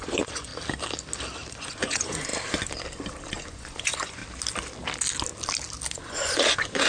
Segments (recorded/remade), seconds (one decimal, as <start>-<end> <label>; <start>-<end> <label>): 0.0-0.5 remade; 0.5-1.5 recorded; 1.5-2.3 remade; 2.3-3.3 recorded; 3.3-4.2 remade; 4.2-5.9 recorded; 5.9-6.9 remade